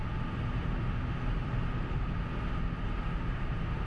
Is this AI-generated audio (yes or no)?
no